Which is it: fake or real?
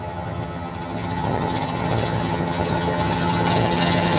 fake